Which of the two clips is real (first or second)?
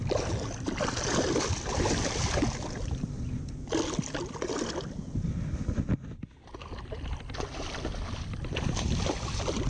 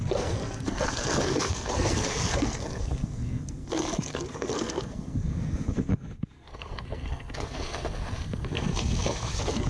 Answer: first